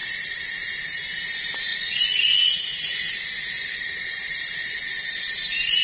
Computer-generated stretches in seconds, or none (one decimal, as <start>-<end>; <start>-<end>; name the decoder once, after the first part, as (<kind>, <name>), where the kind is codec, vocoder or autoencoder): 1.7-3.1 (vocoder, Vocos); 3.6-4.2